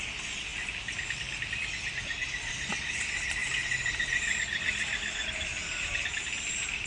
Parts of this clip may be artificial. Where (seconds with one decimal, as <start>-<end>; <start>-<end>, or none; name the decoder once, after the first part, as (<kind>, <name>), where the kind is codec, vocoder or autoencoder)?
none